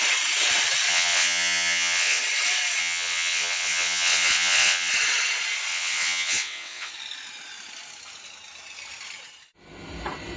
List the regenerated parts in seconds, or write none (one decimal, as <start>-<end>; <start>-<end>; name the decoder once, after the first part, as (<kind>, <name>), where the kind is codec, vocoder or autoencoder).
0.9-2.2 (vocoder, WaveNeXt); 2.8-4.9; 5.7-6.9